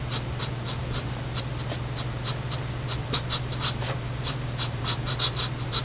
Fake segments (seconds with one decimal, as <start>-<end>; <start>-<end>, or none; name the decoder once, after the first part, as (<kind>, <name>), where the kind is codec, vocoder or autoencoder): 3.0-5.1 (vocoder, BigVGAN v2)